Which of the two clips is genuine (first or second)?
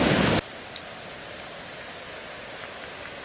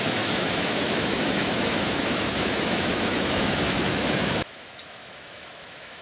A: first